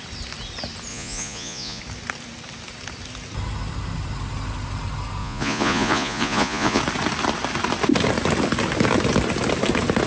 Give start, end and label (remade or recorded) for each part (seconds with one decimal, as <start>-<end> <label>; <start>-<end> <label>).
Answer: 0.0-0.9 recorded; 0.9-1.8 remade; 1.8-5.2 recorded; 5.2-6.8 remade; 6.8-10.1 recorded